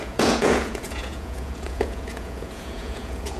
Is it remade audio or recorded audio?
remade